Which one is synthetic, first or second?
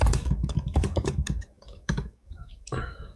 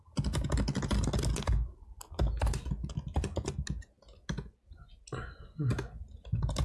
first